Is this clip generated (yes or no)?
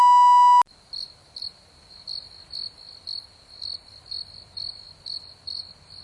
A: no